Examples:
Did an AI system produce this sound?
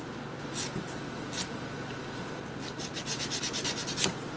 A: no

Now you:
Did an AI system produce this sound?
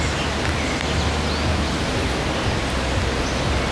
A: no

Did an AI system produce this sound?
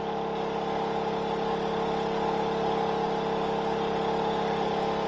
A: no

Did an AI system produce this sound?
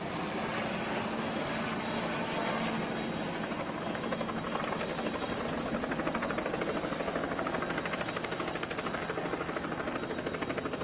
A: no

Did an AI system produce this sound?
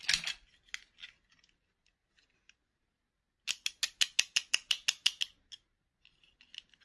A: no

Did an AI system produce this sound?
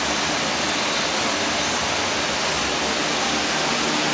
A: no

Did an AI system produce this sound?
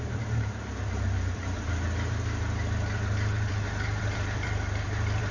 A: yes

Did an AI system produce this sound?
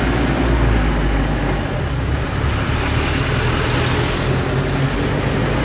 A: no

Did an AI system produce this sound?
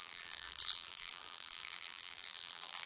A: yes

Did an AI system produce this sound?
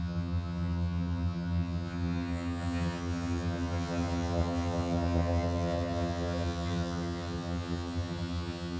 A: yes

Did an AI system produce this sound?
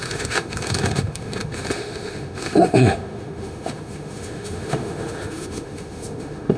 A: yes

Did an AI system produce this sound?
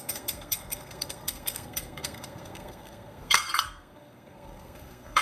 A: yes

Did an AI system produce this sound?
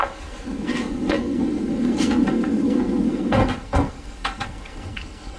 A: yes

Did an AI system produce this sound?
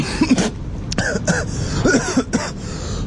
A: no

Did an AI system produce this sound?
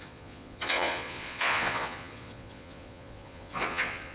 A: yes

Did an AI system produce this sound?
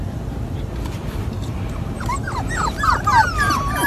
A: no